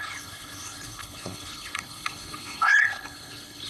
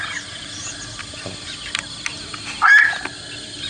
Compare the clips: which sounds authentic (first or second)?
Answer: second